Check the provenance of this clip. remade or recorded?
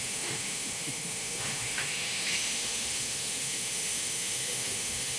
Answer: remade